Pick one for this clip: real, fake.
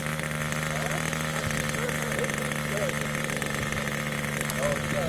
real